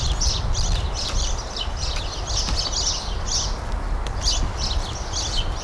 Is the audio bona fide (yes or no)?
yes